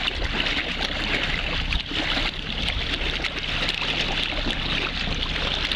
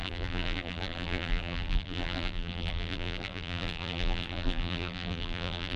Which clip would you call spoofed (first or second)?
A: second